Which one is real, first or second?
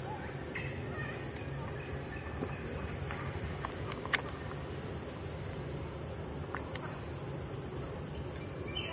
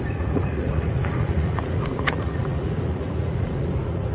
first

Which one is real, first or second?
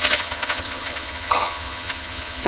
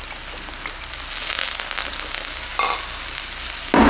second